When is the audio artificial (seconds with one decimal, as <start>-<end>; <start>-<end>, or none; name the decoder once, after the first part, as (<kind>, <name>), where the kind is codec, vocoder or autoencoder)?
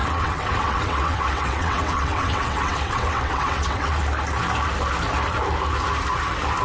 0.0-4.0 (vocoder, WaveNeXt)